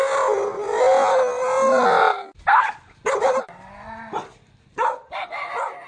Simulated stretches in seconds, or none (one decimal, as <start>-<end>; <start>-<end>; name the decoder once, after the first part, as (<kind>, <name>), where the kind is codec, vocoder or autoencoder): none